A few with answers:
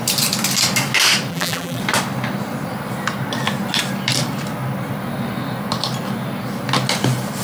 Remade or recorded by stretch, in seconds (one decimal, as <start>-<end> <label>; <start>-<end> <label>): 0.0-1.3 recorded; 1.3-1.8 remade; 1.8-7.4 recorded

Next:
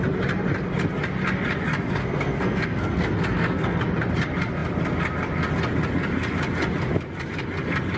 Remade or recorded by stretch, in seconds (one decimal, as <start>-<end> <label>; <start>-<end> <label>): 0.0-2.0 recorded; 2.0-3.8 remade; 3.8-8.0 recorded

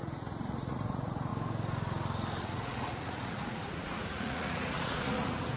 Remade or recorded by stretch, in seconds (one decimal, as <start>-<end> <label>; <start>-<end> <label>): 0.0-1.3 remade; 1.3-2.4 recorded; 2.4-5.6 remade

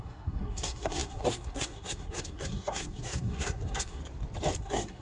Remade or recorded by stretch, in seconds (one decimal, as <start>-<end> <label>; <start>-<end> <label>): 0.0-4.0 remade; 4.0-4.6 recorded; 4.6-5.0 remade